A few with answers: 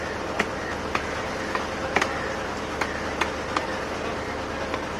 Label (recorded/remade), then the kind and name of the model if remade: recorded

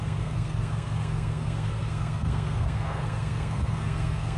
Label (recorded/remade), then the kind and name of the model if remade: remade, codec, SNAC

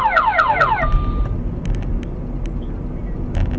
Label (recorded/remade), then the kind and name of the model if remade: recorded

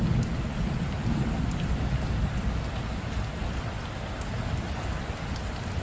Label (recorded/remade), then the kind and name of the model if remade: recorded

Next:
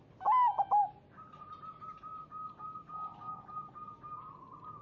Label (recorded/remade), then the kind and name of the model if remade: recorded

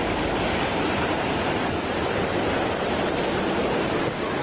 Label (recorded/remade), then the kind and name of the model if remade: remade, vocoder, BigVGAN v2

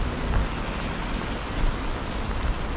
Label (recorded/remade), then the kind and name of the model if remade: recorded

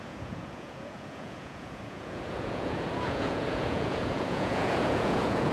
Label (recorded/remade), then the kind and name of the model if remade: remade, vocoder, Vocos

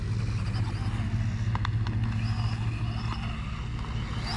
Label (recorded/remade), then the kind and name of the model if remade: recorded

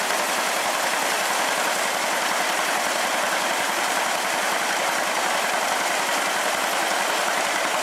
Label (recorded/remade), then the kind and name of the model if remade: recorded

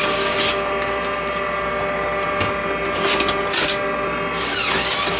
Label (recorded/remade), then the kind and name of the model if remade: recorded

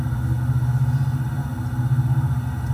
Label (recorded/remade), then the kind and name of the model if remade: recorded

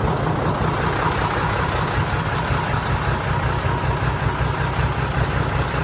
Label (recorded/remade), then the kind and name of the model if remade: recorded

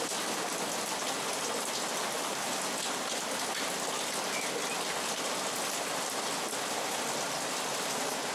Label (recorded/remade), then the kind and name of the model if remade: recorded